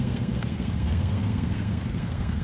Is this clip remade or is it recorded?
remade